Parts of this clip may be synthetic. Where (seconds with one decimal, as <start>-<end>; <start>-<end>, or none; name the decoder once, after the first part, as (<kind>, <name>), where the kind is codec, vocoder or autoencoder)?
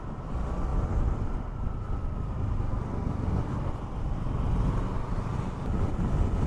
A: none